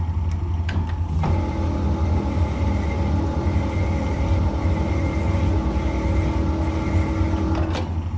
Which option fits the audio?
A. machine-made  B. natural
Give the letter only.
B